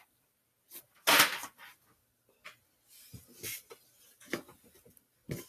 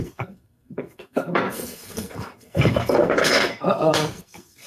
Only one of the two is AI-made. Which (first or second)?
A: second